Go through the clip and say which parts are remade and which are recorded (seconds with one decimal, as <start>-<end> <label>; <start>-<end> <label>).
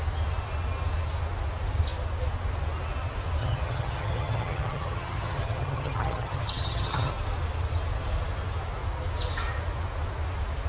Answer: 0.0-3.4 recorded; 3.4-7.1 remade; 7.1-10.7 recorded